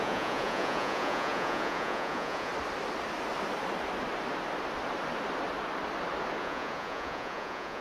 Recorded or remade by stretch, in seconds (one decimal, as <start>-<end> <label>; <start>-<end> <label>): 0.0-2.5 remade; 2.5-6.4 recorded; 6.4-7.8 remade